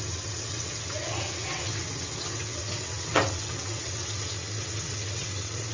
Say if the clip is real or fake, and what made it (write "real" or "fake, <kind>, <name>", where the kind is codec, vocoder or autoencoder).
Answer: fake, vocoder, WaveNeXt